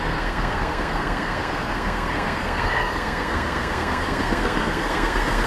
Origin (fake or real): fake